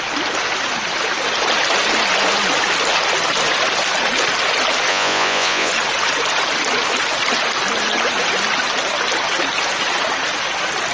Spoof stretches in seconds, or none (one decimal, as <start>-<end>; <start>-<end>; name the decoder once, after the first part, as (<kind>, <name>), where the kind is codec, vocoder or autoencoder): 4.9-5.7 (vocoder, Vocos)